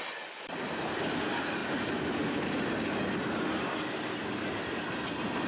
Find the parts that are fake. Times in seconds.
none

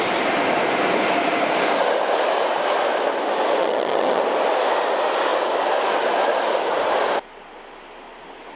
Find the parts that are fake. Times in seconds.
3.6-4.2 (vocoder, HiFi-GAN)

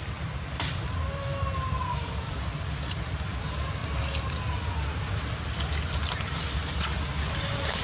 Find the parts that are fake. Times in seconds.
none

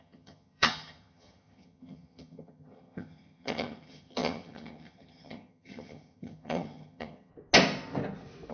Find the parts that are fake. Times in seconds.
0.0-7.3 (vocoder, HiFi-GAN)